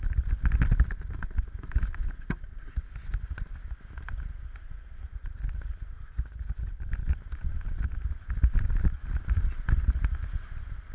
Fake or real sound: real